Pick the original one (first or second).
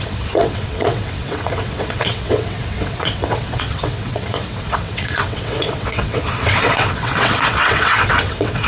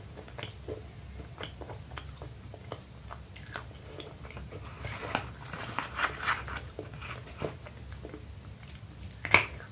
second